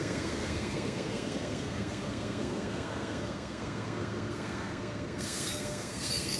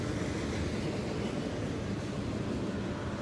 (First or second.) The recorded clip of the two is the second